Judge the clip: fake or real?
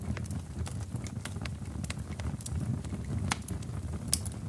real